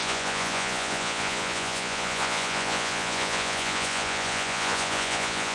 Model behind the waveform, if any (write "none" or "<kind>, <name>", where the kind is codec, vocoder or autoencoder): vocoder, Vocos